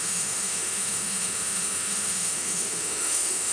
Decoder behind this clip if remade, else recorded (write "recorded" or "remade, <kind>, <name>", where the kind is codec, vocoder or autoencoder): remade, autoencoder, DAC-VAE